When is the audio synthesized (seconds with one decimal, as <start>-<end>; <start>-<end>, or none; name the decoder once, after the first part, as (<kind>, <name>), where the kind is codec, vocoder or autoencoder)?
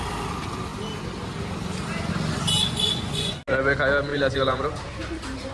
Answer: 2.6-3.4 (vocoder, Vocos); 4.1-4.6